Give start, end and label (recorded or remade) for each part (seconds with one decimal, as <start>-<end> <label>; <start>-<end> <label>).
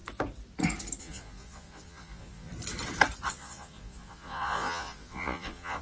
0.0-1.0 recorded; 1.0-2.5 remade; 2.5-3.3 recorded; 3.3-5.8 remade